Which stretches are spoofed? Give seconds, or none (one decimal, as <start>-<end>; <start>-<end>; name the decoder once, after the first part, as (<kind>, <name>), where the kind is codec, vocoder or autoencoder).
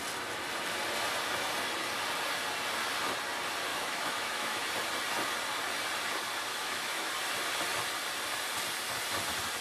3.7-4.6 (autoencoder, DAC-VAE); 6.5-7.1